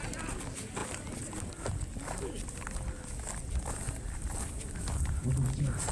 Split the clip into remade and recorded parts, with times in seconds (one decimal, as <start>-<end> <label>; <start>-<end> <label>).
0.0-5.9 recorded